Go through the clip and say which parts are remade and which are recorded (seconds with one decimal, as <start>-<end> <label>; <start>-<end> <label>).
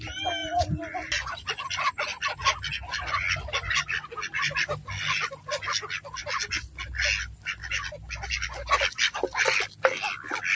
0.0-10.5 recorded